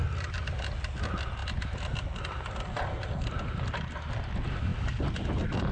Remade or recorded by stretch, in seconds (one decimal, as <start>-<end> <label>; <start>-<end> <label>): 0.0-5.7 recorded